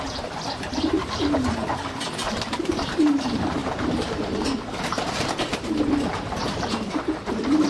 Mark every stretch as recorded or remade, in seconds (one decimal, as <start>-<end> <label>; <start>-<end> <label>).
0.0-7.7 remade